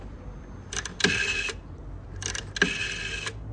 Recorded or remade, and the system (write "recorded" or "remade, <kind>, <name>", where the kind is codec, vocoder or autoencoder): recorded